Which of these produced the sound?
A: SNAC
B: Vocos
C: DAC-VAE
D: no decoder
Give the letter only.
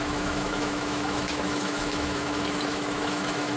C